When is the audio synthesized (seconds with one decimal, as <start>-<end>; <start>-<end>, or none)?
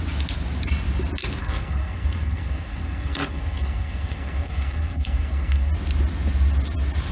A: 1.4-5.7